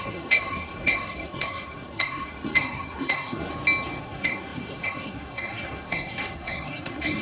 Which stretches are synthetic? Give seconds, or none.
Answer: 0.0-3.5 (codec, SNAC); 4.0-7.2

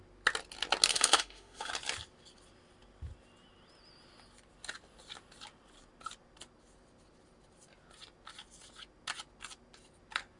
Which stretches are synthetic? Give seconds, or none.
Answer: 0.9-1.7 (autoencoder, DAC-VAE)

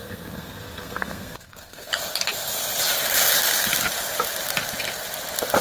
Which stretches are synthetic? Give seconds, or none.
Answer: 0.0-1.9 (codec, SNAC)

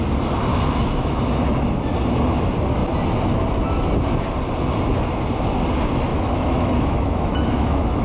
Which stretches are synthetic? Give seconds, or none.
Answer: 0.5-1.2 (autoencoder, DAC-VAE); 6.1-8.0

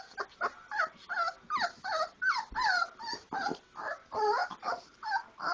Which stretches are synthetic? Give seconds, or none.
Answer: none

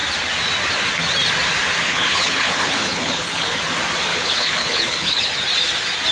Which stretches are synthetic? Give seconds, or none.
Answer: 1.8-3.6 (codec, HILCodec); 4.1-5.3